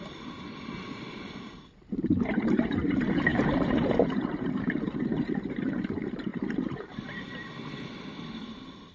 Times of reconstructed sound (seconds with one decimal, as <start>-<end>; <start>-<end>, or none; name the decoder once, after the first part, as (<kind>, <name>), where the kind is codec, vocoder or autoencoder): 0.0-8.9 (vocoder, BigVGAN v2)